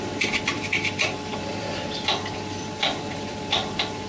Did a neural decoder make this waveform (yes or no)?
yes